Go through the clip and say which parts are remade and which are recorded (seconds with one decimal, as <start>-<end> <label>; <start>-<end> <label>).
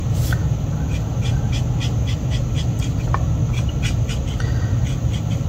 0.0-5.5 recorded